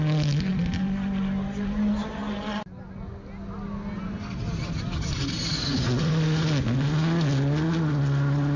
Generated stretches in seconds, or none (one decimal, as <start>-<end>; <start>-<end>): none